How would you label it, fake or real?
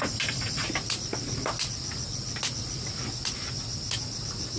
real